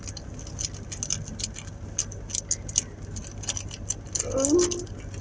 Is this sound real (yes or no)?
yes